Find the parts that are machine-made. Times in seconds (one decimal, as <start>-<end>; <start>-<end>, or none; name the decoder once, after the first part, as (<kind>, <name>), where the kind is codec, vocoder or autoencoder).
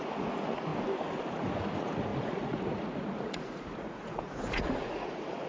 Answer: 0.0-0.7 (vocoder, Vocos); 1.3-5.5